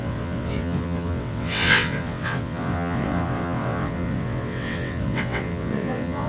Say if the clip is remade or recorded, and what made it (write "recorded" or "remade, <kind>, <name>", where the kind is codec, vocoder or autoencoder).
remade, vocoder, WaveNeXt